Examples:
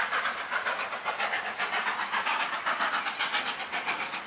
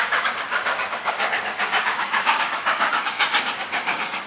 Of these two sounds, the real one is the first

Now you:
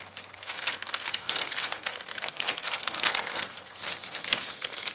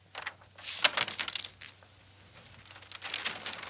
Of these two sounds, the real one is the second